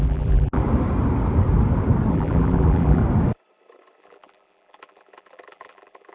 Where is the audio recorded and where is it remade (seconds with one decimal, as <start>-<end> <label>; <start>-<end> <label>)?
0.0-0.6 remade; 0.6-2.1 recorded; 2.1-3.0 remade; 3.0-4.0 recorded; 4.0-6.1 remade